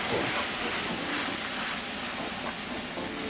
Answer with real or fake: fake